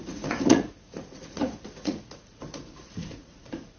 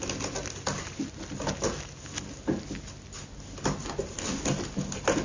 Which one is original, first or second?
second